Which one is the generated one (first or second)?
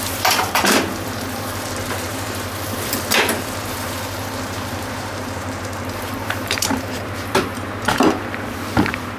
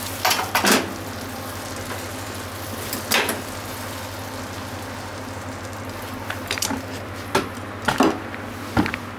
first